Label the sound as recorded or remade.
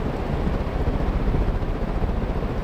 recorded